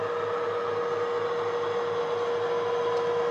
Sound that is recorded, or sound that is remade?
recorded